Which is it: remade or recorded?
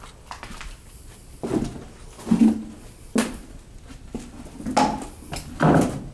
recorded